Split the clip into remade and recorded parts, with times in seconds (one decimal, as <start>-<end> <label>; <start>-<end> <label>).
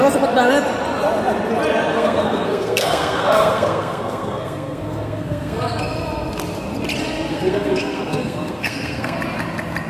0.0-1.9 recorded; 1.9-5.8 remade; 5.8-7.3 recorded; 7.3-9.2 remade; 9.2-9.9 recorded